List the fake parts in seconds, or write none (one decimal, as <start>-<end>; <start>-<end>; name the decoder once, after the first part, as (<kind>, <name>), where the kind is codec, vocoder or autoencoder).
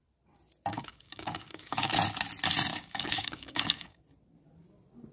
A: 0.7-1.9 (codec, DAC); 2.7-4.0